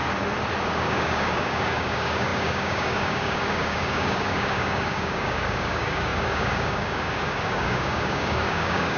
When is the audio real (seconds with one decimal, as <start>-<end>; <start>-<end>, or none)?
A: 0.0-0.7